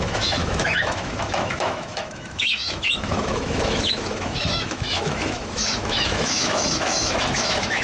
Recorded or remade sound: remade